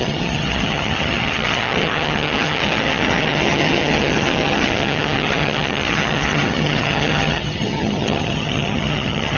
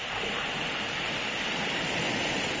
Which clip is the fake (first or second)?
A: first